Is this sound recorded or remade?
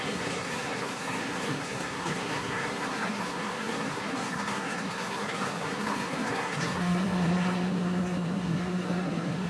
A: remade